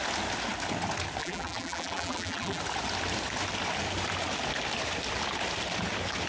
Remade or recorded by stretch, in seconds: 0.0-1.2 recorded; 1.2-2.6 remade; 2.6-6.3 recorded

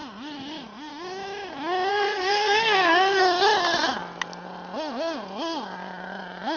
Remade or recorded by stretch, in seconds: 0.0-1.9 recorded; 1.9-3.2 remade; 3.2-6.6 recorded

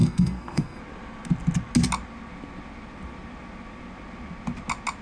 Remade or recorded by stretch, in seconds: 0.0-0.8 remade; 0.8-5.0 recorded

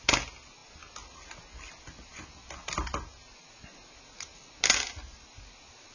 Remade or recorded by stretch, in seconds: 0.0-5.9 recorded